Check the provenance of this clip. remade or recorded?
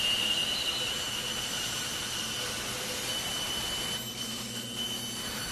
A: recorded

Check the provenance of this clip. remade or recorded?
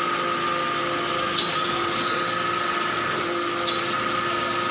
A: recorded